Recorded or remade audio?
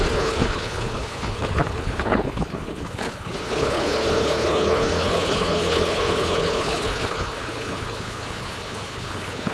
remade